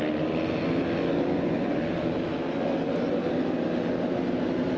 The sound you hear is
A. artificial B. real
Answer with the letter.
B